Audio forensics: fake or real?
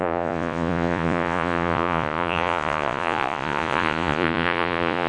fake